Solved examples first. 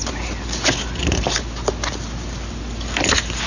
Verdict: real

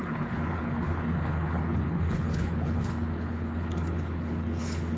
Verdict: fake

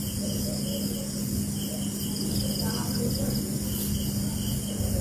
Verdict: real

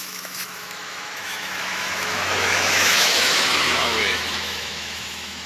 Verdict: fake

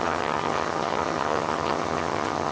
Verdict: fake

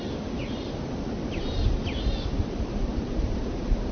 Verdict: real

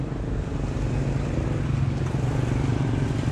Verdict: real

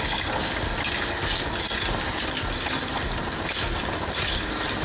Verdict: real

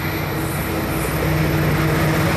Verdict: real